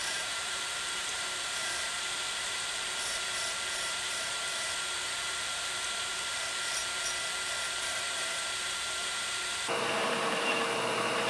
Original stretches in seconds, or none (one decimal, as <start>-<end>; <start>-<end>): 6.8-7.8